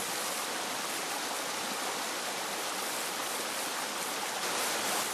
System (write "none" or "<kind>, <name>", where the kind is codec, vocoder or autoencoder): none